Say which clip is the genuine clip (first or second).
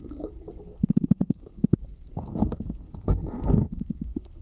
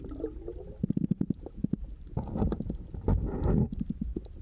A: second